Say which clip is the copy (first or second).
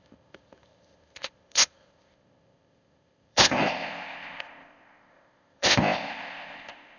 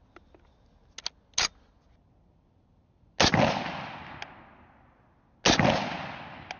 first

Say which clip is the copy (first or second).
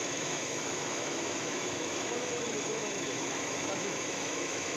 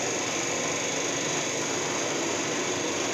first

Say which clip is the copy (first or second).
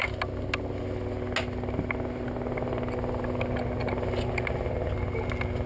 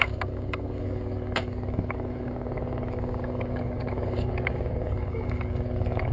second